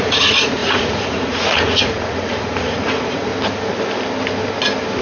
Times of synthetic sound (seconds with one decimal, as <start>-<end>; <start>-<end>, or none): 0.0-3.3